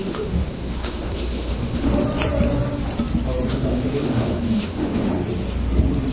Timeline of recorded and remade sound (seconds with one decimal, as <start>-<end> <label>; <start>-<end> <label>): 0.0-1.9 remade; 1.9-3.5 recorded; 3.5-5.1 remade; 5.1-6.1 recorded